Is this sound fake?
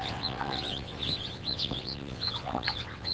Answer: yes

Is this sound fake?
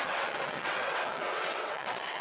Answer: yes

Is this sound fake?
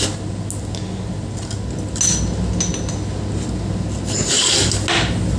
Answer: no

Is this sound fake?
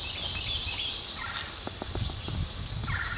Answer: no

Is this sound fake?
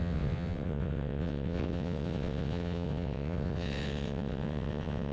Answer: yes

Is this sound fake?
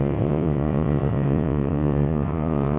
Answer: yes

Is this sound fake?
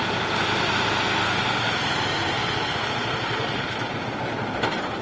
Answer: no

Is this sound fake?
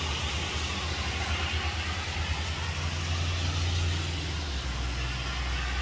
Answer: no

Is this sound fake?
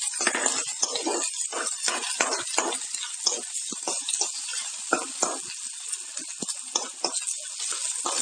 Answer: no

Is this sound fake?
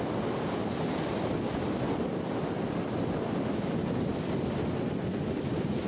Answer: no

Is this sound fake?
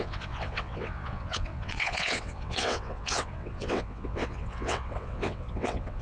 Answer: yes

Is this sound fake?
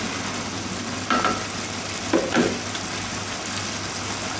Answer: no